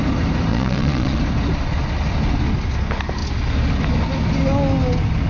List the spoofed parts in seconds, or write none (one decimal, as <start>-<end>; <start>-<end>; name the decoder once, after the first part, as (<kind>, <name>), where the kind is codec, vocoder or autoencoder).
0.5-1.2 (vocoder, Vocos)

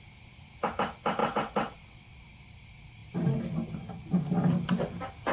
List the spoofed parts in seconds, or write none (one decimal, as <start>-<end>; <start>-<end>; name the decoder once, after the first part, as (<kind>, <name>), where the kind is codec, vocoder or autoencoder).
1.2-2.2 (vocoder, WaveNeXt)